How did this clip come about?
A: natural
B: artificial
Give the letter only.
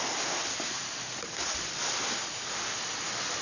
A